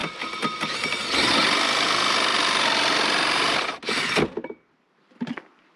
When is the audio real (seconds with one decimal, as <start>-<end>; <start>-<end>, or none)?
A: 0.0-2.3